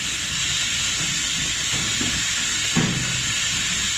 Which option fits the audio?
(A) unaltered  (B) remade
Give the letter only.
A